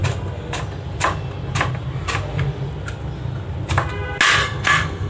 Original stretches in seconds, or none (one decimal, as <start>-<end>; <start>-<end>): 0.0-4.4